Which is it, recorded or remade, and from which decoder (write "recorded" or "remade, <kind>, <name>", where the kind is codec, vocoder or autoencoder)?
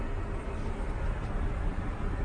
remade, vocoder, BigVGAN v2